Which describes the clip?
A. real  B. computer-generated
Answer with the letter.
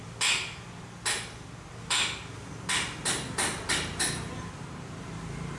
A